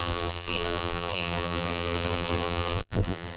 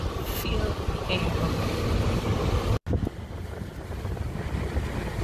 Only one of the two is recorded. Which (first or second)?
second